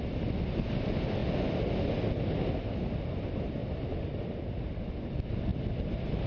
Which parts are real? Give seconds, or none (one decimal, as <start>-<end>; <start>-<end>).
0.0-6.3

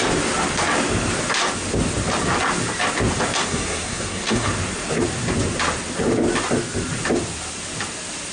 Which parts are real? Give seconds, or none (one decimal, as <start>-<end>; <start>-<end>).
0.0-3.4; 4.5-8.3

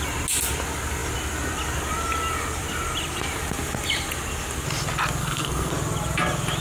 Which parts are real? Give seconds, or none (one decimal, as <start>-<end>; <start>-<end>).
0.0-5.2; 5.7-6.6

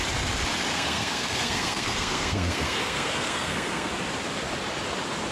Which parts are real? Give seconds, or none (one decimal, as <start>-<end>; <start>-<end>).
0.0-0.7; 3.9-5.3

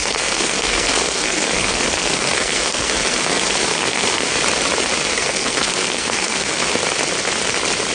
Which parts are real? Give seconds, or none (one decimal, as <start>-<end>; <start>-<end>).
4.4-5.1; 6.6-7.9

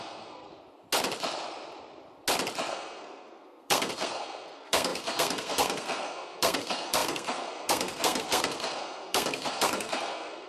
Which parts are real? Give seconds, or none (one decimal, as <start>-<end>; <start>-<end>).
0.5-2.7

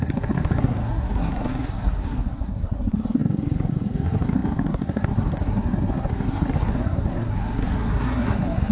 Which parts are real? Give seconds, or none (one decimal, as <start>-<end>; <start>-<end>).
none